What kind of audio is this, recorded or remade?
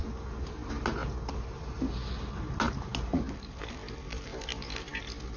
recorded